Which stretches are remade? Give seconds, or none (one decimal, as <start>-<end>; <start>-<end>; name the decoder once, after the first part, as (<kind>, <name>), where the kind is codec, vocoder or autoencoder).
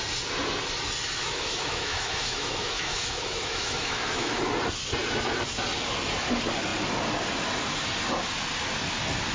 1.2-4.4 (autoencoder, DAC-VAE)